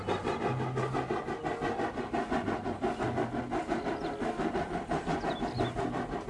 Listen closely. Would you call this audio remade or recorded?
recorded